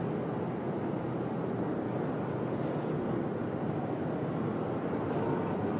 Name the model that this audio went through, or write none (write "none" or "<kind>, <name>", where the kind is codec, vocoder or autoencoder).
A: none